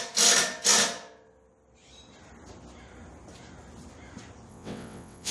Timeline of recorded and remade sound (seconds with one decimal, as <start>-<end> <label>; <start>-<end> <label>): 0.0-4.5 recorded; 4.5-5.3 remade